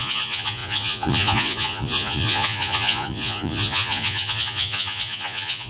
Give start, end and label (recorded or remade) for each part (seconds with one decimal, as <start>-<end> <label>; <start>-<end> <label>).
0.0-5.7 remade